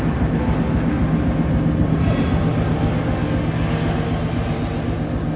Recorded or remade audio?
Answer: recorded